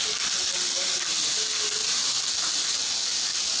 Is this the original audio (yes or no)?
yes